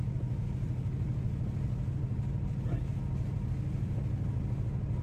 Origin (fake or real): real